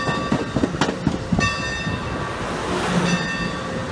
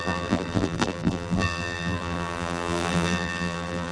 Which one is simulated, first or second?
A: second